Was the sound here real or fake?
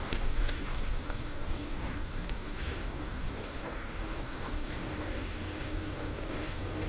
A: fake